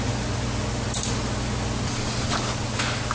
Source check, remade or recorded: recorded